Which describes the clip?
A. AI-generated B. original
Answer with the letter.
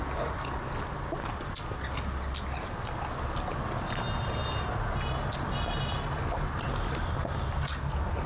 B